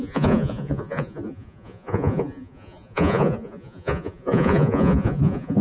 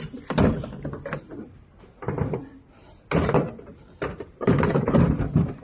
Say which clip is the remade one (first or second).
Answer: first